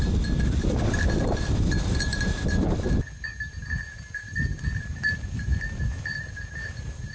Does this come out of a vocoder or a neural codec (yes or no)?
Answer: no